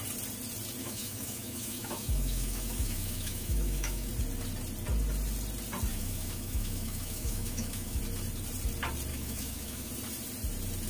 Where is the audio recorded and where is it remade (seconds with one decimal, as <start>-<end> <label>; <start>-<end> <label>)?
0.0-0.8 recorded; 0.8-4.1 remade; 4.1-5.9 recorded; 5.9-8.0 remade; 8.0-9.1 recorded; 9.1-9.9 remade; 9.9-10.9 recorded